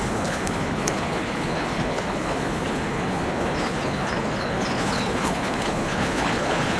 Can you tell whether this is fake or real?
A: fake